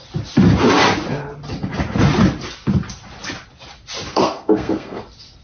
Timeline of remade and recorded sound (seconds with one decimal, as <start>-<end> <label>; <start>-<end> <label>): 0.0-4.1 recorded; 4.1-5.0 remade; 5.0-5.4 recorded